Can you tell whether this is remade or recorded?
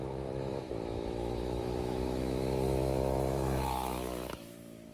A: remade